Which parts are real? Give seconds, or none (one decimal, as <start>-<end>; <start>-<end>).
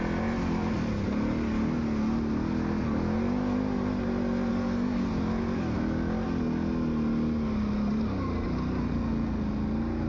0.0-4.5; 5.1-10.1